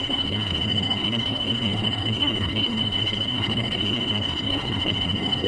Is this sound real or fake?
fake